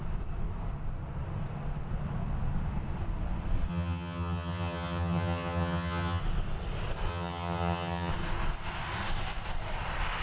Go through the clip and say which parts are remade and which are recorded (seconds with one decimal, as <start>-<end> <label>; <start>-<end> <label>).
0.0-3.7 recorded; 3.7-6.2 remade; 6.2-7.1 recorded; 7.1-8.1 remade; 8.1-10.2 recorded